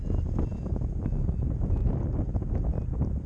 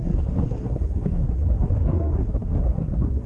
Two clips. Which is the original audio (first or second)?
first